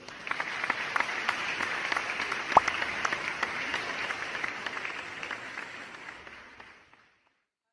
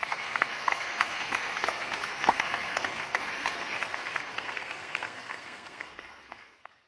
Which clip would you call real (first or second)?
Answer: first